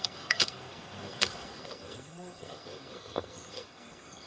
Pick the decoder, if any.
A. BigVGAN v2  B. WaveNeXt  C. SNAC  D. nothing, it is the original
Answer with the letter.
C